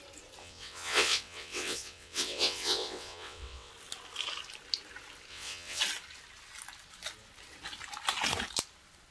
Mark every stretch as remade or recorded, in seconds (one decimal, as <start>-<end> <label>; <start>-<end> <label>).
0.0-0.4 recorded; 0.4-3.7 remade; 3.7-5.3 recorded; 5.3-5.8 remade; 5.8-9.1 recorded